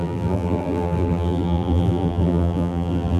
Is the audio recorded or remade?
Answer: remade